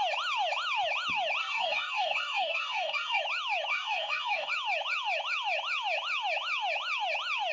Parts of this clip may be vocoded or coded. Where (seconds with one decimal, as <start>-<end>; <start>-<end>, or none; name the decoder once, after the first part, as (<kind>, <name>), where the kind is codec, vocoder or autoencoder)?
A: 1.4-3.2 (codec, DAC); 3.7-4.5